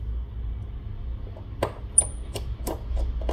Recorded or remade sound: recorded